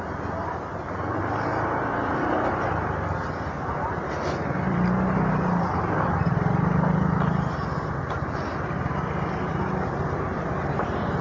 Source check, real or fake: real